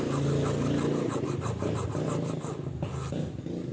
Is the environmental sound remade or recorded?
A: recorded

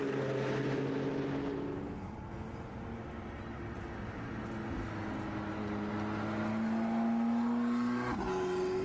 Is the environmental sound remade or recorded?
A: recorded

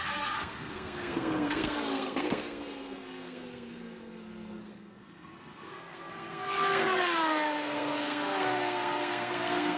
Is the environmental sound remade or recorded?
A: remade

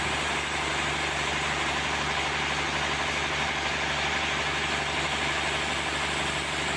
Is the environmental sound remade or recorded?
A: recorded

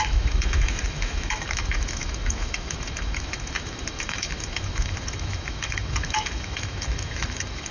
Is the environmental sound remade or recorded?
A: remade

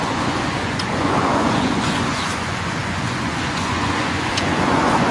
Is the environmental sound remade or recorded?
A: remade